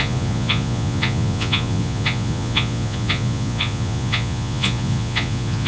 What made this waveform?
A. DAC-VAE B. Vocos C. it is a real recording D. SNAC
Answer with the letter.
B